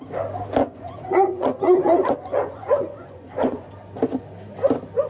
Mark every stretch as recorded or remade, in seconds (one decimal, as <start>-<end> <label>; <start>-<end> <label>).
0.0-0.6 recorded; 0.6-3.7 remade; 3.7-5.1 recorded